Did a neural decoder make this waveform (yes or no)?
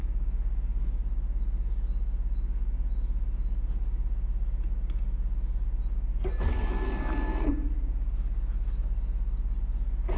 no